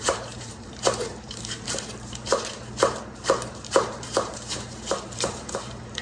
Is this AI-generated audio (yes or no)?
yes